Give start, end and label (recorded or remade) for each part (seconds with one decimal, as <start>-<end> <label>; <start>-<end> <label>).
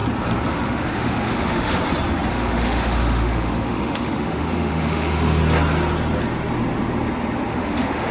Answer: 0.0-0.5 recorded; 0.5-1.8 remade; 1.8-2.3 recorded; 2.3-5.4 remade; 5.4-7.5 recorded; 7.5-8.1 remade